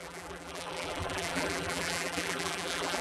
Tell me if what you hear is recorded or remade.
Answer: remade